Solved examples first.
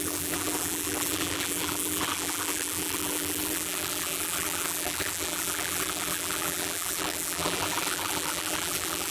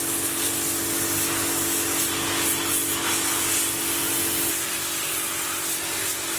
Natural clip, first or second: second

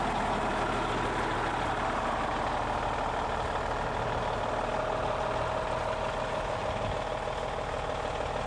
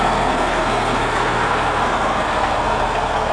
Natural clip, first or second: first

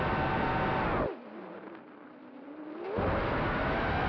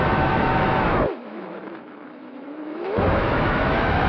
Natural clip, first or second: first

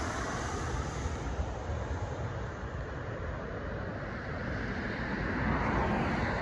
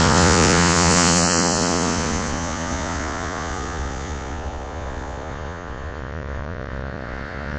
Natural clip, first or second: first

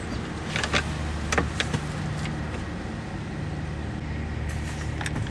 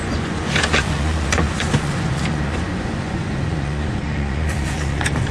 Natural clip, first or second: first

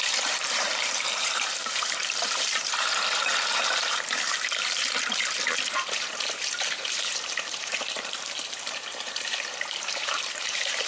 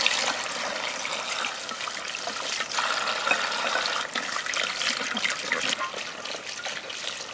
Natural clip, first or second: second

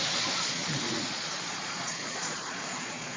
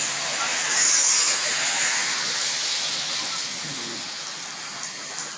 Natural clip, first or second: second